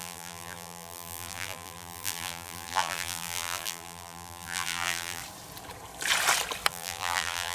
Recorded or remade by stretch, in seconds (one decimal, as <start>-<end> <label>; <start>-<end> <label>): 0.0-5.2 remade; 5.2-6.7 recorded; 6.7-7.5 remade